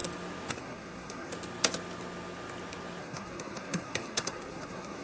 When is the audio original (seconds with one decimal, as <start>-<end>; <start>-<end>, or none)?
0.0-0.5; 1.3-3.0